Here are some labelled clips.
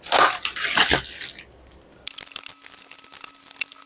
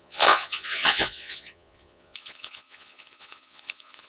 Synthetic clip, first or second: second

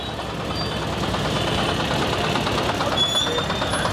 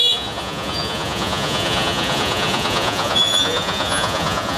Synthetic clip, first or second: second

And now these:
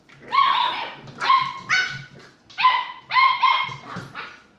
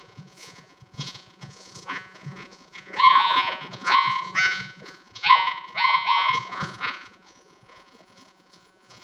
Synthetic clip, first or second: second